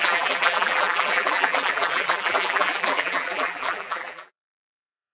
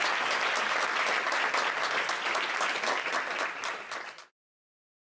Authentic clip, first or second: second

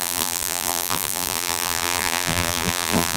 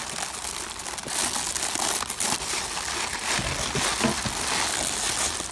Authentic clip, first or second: second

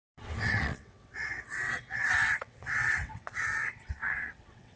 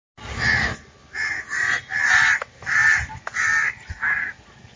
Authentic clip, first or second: second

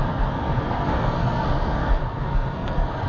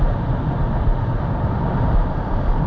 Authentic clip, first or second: second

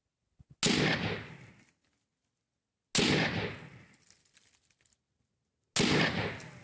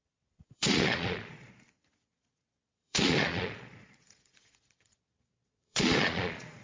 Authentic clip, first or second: first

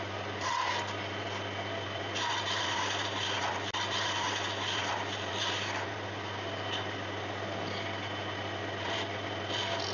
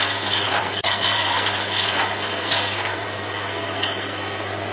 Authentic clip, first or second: first